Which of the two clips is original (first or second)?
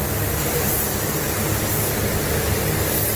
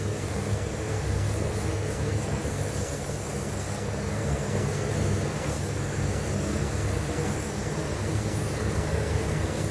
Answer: first